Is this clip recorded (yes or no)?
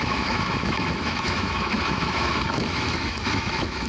no